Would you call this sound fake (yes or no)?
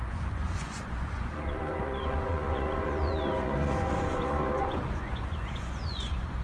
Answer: yes